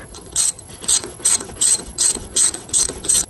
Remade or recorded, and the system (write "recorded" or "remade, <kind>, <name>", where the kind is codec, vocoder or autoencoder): remade, vocoder, WaveNeXt